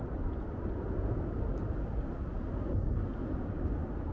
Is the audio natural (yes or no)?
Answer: yes